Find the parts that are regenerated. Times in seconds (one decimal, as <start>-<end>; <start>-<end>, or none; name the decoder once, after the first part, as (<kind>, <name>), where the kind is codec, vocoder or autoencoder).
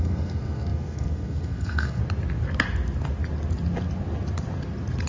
0.0-2.0 (codec, SNAC)